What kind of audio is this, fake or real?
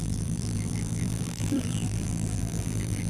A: fake